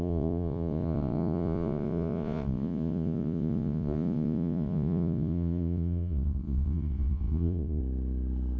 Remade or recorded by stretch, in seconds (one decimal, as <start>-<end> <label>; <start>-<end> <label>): 0.0-7.8 remade; 7.8-8.6 recorded